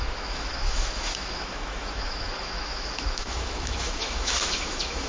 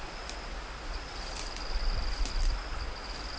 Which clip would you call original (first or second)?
second